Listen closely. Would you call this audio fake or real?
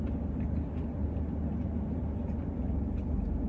real